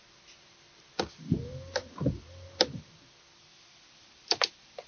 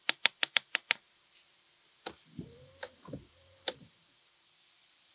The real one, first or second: first